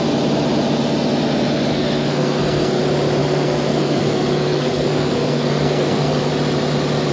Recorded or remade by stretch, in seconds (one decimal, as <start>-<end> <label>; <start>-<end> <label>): 0.0-1.7 recorded; 1.7-2.8 remade; 2.8-3.2 recorded; 3.2-6.3 remade; 6.3-7.1 recorded